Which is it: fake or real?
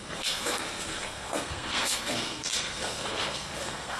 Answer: fake